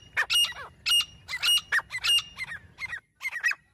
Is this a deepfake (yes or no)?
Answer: no